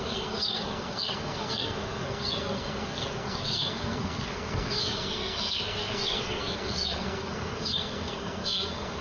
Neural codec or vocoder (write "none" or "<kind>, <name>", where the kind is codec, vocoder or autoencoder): codec, SNAC